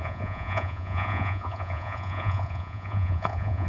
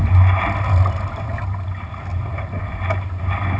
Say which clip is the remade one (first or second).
first